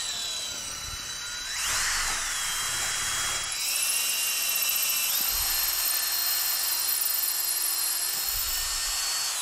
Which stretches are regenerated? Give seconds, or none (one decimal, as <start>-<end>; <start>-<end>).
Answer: none